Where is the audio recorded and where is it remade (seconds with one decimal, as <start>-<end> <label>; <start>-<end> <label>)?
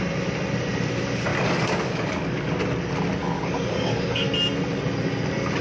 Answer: 0.0-1.3 recorded; 1.3-2.5 remade; 2.5-3.2 recorded; 3.2-4.3 remade; 4.3-5.6 recorded